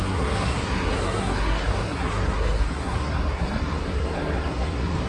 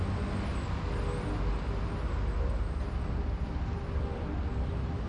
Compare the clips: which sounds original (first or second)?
second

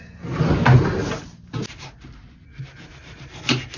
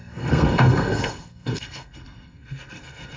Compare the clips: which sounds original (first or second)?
first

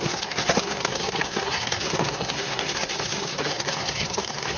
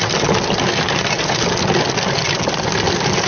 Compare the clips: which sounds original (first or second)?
second